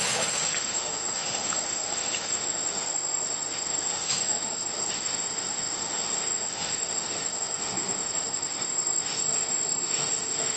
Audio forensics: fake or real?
fake